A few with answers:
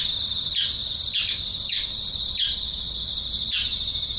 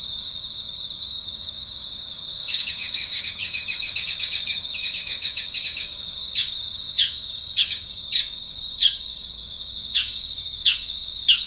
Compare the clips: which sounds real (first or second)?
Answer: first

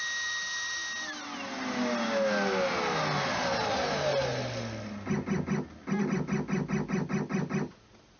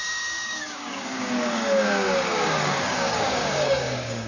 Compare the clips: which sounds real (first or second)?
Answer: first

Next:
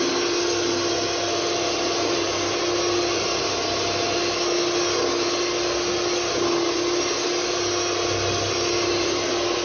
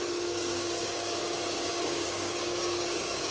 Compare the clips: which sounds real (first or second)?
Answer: first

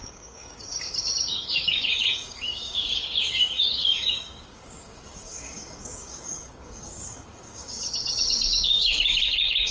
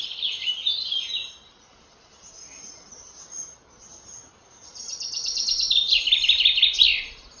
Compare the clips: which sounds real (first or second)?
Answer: second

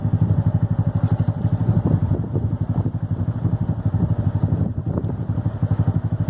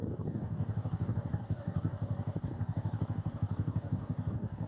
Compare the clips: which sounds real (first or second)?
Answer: first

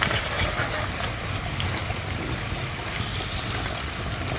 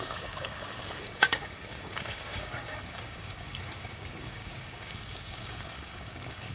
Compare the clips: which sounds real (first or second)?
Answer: first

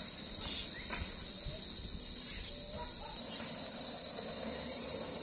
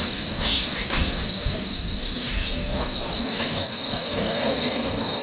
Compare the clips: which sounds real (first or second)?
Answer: first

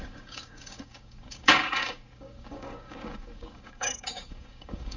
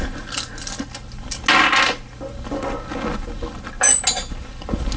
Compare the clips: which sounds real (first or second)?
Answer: second